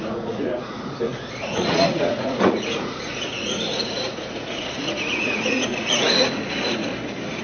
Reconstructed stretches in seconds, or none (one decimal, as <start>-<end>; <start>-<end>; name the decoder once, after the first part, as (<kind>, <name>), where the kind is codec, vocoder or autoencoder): 0.0-6.9 (vocoder, Vocos)